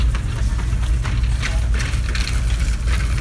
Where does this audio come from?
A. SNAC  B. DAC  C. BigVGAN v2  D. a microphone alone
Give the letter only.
D